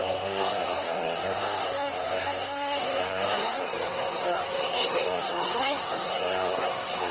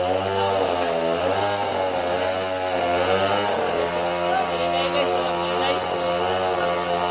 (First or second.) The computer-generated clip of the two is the first